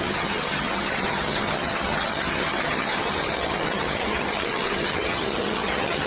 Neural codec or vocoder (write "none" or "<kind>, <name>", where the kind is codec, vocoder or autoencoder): vocoder, HiFi-GAN